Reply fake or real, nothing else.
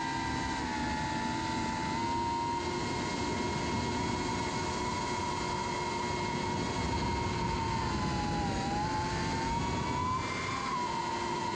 real